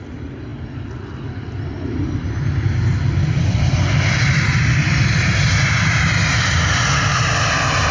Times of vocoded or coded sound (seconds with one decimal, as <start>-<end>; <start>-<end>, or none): none